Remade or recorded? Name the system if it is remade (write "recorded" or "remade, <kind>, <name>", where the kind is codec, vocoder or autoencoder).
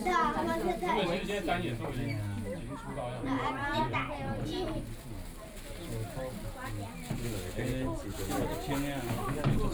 recorded